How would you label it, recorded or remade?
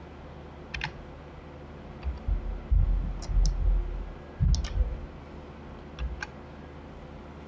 recorded